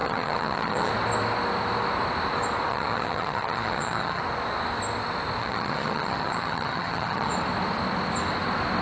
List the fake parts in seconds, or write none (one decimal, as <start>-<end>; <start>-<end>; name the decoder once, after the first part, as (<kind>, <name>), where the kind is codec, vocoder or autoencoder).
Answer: 0.0-0.9 (vocoder, HiFi-GAN); 2.7-4.2; 5.4-7.3